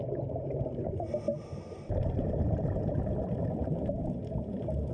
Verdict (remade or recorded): recorded